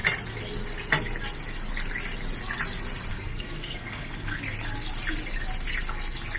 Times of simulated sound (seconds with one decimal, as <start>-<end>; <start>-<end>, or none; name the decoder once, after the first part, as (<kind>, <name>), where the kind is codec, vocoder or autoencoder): 3.1-4.4 (codec, SNAC)